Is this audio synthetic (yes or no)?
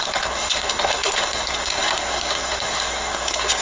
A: yes